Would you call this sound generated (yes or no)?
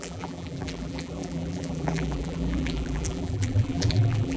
yes